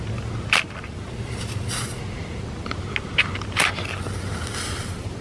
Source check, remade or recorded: recorded